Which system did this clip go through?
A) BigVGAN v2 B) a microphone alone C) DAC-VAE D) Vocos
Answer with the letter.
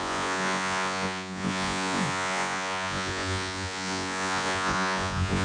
D